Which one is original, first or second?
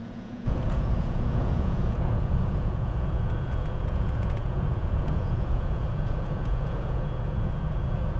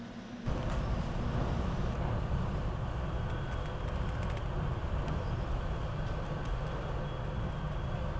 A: second